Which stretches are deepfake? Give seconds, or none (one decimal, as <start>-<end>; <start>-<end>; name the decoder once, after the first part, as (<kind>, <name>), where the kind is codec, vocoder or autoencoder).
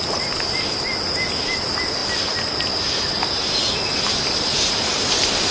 none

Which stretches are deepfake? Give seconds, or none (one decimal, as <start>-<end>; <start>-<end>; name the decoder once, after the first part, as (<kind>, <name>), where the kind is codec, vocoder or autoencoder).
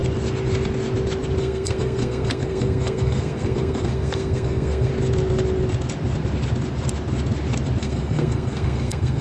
1.4-4.9 (codec, SNAC); 7.8-9.2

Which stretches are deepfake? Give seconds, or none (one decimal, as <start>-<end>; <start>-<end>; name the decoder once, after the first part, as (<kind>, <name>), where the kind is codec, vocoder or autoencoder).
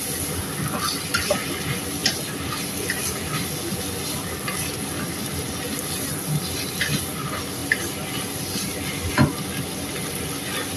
none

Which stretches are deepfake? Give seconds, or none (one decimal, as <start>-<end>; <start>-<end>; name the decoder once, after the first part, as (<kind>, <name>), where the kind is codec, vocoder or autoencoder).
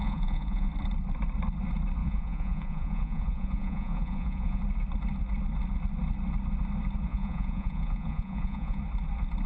0.0-0.7 (vocoder, Vocos); 2.0-4.6; 7.1-8.8